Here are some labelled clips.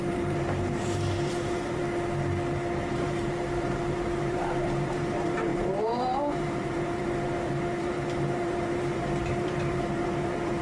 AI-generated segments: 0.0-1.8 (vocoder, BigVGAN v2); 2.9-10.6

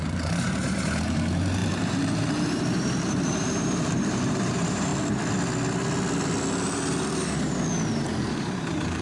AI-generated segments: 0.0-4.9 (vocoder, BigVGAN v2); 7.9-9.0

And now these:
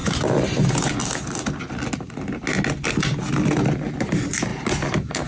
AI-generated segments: 0.0-1.0 (vocoder, BigVGAN v2); 4.0-5.3

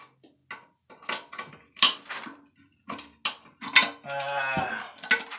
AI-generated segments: none